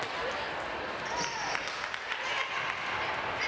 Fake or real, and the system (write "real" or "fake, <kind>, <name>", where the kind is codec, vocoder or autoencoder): real